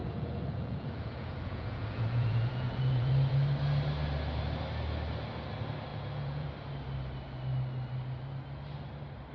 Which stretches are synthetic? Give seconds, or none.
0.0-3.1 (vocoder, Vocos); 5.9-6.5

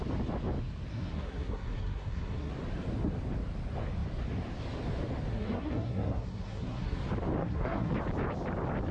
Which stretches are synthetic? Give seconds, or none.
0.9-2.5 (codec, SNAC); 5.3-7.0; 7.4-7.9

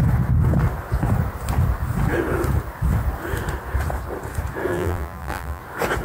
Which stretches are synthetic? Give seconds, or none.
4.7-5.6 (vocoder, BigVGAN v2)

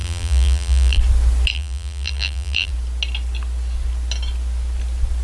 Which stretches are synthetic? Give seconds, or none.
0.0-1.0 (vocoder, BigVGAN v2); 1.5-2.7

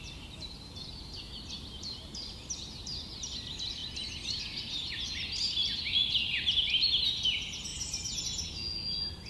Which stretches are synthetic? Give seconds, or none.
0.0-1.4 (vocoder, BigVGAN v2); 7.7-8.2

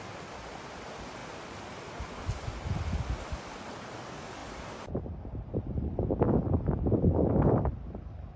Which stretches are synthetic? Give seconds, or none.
none